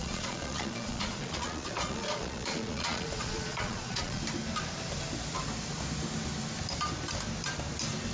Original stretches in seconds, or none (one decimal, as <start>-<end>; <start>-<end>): 4.2-8.1